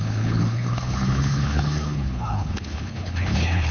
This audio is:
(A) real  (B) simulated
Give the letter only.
B